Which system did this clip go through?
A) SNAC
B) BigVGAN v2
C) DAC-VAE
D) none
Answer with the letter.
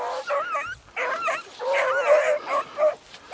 D